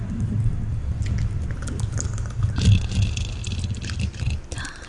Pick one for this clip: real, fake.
real